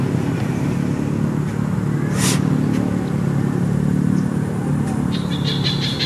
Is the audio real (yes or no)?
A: yes